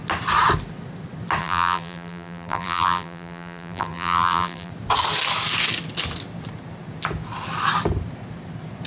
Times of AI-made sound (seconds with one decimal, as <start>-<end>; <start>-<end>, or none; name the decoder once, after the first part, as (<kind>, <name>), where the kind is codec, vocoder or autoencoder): 1.4-4.7 (vocoder, BigVGAN v2)